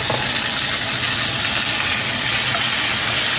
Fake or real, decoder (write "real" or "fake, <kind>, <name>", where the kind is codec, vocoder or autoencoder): real